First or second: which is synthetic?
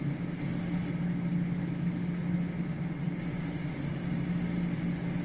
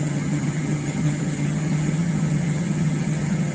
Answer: second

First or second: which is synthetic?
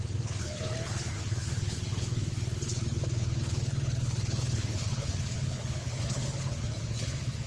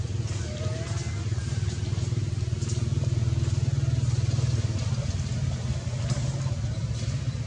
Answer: first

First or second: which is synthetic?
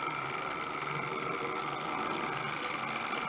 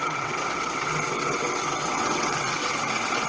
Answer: second